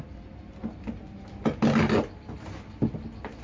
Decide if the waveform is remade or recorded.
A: recorded